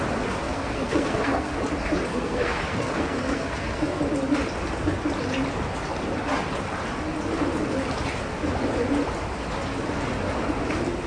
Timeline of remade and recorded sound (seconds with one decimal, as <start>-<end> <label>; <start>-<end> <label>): 0.0-0.4 recorded; 0.4-1.5 remade; 1.5-2.1 recorded; 2.1-4.0 remade; 4.0-11.1 recorded